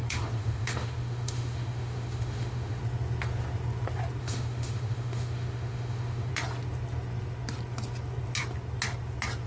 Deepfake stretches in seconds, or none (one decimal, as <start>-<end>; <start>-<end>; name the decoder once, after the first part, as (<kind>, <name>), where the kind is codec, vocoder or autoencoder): 0.0-2.8 (autoencoder, DAC-VAE); 4.2-6.3